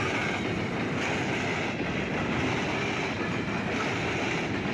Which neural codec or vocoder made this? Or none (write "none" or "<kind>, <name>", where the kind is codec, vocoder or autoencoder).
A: none